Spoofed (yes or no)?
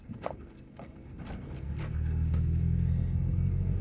yes